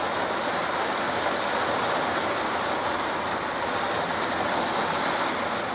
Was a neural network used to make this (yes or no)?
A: no